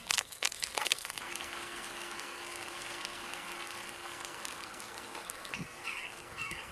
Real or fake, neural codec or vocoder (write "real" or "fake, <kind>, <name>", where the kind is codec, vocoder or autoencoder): fake, codec, SNAC